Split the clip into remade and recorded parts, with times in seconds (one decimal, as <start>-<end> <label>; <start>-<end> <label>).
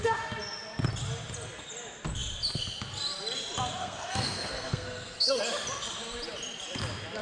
0.0-3.8 recorded; 3.8-5.4 remade; 5.4-7.2 recorded